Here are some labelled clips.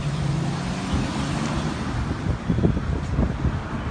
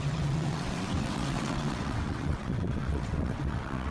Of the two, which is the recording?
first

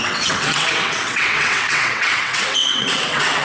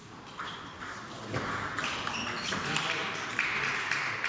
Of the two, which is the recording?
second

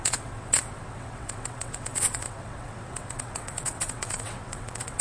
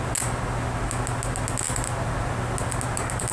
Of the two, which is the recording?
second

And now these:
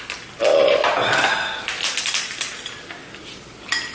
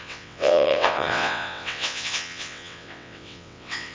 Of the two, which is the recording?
first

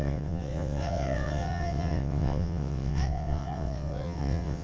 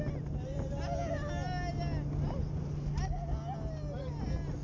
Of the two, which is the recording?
second